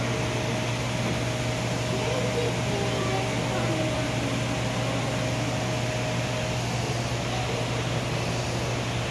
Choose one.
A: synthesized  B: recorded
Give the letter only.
B